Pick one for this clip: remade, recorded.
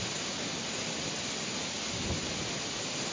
recorded